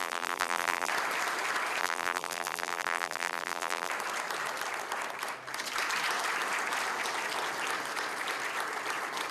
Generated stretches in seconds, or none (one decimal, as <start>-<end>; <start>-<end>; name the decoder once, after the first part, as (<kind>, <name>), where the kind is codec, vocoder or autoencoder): 0.0-0.9 (vocoder, BigVGAN v2); 1.8-3.9

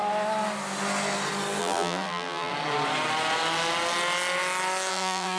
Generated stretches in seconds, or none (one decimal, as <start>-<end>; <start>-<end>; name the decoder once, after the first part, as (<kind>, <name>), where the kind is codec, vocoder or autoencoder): 1.6-2.5 (vocoder, BigVGAN v2); 4.9-5.4

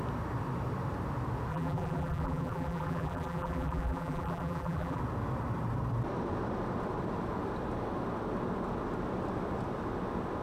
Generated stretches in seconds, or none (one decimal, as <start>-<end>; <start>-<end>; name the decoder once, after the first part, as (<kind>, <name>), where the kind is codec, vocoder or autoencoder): 1.5-5.0 (vocoder, BigVGAN v2)

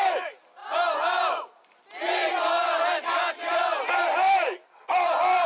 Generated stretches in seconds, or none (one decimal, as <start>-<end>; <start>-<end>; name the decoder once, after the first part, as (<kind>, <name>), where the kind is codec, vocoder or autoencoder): none

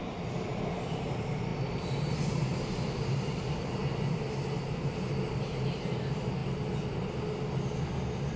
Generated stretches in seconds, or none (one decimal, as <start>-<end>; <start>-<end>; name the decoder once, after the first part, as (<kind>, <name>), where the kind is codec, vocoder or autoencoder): 1.5-3.7 (vocoder, BigVGAN v2)

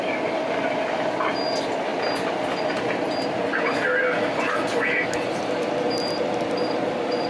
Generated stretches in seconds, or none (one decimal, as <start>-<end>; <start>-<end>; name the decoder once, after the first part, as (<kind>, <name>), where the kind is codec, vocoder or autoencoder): none